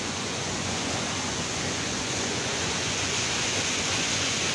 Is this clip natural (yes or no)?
no